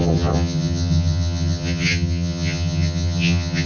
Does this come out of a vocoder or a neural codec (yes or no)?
yes